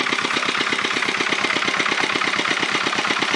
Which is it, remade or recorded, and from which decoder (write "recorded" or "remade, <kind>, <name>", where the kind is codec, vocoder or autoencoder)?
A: recorded